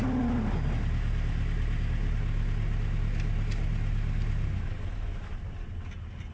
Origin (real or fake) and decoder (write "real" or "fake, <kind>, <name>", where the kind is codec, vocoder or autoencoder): real